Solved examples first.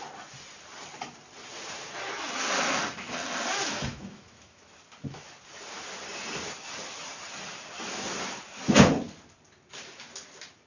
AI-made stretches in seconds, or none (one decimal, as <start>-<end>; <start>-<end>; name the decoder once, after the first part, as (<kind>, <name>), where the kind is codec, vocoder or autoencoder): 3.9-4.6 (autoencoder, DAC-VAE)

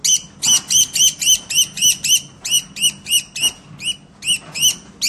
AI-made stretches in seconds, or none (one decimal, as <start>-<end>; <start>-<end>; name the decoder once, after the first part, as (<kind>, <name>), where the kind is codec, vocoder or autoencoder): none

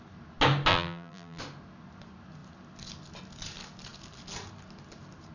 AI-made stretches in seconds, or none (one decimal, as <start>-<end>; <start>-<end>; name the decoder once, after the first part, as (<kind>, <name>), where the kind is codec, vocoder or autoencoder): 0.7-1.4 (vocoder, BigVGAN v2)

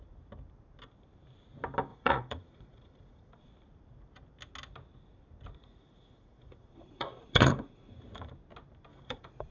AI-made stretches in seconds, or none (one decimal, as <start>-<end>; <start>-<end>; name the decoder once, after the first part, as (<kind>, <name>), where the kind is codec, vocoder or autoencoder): 1.9-3.5 (vocoder, Vocos); 5.6-8.3; 8.9-9.5